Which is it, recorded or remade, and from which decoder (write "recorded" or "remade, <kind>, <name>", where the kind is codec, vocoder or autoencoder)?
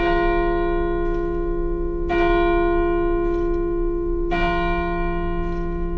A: recorded